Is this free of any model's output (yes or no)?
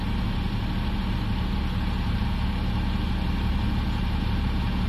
yes